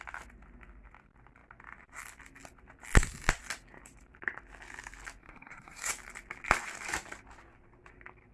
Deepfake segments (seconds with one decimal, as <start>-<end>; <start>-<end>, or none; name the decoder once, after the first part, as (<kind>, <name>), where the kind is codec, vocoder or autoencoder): 5.2-5.9 (codec, SNAC)